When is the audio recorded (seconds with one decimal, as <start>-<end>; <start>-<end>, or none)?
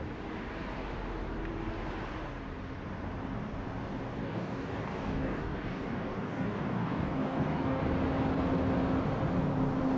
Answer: 0.0-4.2; 7.8-10.0